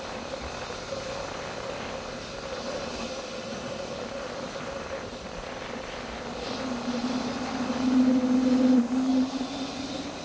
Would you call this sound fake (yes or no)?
no